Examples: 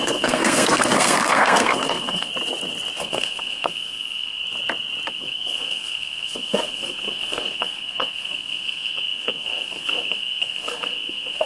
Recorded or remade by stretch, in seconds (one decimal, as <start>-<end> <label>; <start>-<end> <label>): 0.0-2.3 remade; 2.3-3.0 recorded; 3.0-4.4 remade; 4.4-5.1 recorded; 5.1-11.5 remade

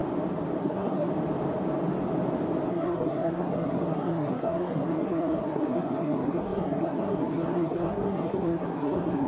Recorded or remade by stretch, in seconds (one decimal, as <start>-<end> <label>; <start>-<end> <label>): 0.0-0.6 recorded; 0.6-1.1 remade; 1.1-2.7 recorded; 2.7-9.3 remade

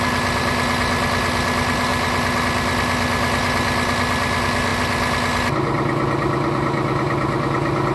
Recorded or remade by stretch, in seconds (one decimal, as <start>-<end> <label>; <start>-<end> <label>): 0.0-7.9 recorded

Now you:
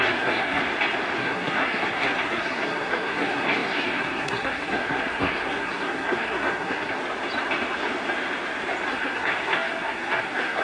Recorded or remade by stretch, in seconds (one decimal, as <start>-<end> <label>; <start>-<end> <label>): 0.0-0.6 remade; 0.6-1.2 recorded; 1.2-7.0 remade; 7.0-8.9 recorded; 8.9-10.6 remade

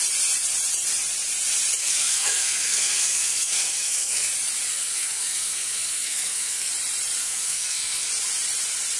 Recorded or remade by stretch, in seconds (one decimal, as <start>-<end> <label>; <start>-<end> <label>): 0.0-1.8 recorded; 1.8-4.3 remade; 4.3-4.7 recorded; 4.7-6.7 remade; 6.7-7.2 recorded; 7.2-8.1 remade; 8.1-9.0 recorded

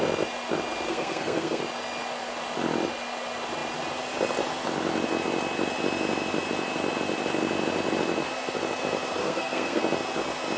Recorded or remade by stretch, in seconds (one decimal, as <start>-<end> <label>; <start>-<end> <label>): 0.0-0.9 recorded; 0.9-1.6 remade; 1.6-9.2 recorded; 9.2-9.8 remade; 9.8-10.6 recorded

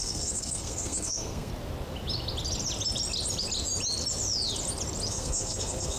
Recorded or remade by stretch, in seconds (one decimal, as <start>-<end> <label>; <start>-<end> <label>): 0.0-1.5 remade; 1.5-5.1 recorded; 5.1-6.0 remade

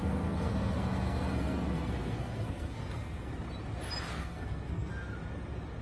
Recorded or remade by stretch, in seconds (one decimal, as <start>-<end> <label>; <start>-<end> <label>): 0.0-3.3 remade; 3.3-4.1 recorded; 4.1-4.9 remade; 4.9-5.8 recorded